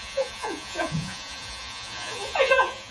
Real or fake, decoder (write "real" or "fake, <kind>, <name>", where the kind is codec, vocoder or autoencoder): fake, vocoder, Vocos